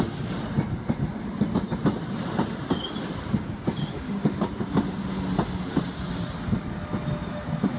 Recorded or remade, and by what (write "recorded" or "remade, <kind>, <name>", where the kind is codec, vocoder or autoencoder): recorded